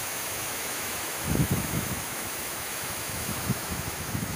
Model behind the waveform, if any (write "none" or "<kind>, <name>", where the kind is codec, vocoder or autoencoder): autoencoder, DAC-VAE